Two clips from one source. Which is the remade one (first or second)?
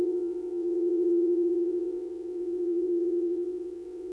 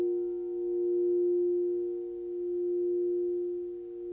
first